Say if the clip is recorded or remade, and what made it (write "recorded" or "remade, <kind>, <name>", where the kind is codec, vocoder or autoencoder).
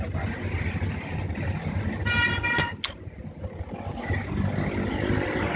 recorded